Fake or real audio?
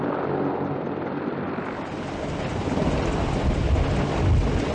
real